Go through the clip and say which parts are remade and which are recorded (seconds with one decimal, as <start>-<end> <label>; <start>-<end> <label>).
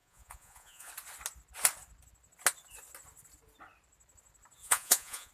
0.0-0.9 remade; 0.9-4.6 recorded; 4.6-5.3 remade